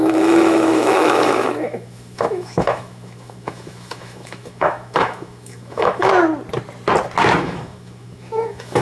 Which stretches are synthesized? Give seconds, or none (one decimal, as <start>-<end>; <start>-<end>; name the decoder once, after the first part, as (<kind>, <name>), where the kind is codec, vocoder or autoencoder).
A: 0.0-6.1 (autoencoder, DAC-VAE); 7.4-8.8